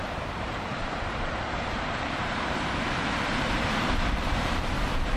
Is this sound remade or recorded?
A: remade